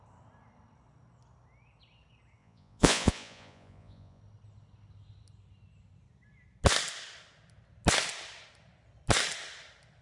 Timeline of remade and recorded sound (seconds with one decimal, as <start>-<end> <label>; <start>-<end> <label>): 0.0-2.4 recorded; 2.4-4.2 remade; 4.2-10.0 recorded